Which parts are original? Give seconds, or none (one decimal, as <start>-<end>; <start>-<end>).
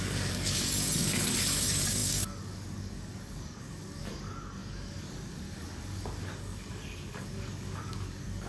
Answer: none